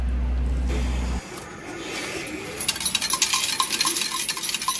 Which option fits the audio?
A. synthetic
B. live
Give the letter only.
B